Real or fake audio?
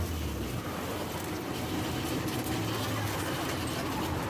real